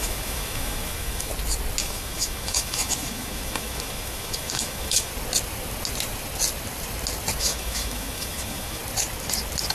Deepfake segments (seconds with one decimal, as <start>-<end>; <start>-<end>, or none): 0.0-1.3; 1.8-5.1; 7.4-8.8